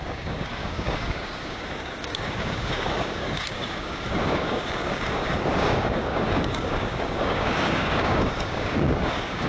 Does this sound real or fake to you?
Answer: fake